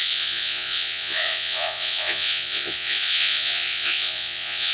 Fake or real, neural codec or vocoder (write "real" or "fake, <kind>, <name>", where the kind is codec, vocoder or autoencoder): fake, vocoder, Vocos